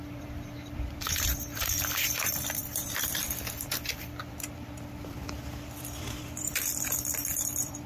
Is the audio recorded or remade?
remade